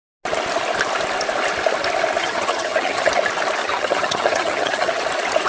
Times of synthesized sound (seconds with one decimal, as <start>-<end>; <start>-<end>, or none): 2.2-3.1; 3.6-5.0